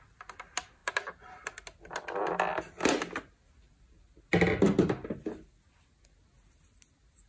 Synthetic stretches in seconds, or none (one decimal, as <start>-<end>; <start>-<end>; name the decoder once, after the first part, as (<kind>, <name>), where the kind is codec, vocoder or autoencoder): none